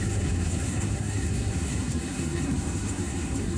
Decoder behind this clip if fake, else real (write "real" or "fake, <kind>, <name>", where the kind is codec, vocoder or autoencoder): fake, codec, SNAC